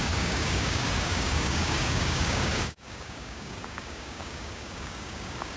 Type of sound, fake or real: fake